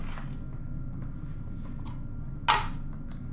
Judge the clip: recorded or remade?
recorded